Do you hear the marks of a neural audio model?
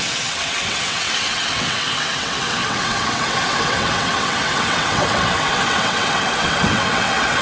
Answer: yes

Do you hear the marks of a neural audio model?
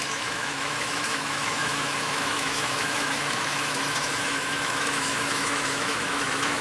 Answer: yes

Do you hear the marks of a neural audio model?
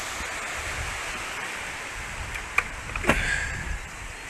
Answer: no